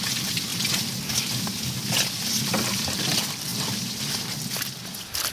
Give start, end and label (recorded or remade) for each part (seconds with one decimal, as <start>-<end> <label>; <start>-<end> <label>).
0.0-0.5 remade; 0.5-1.4 recorded; 1.4-5.3 remade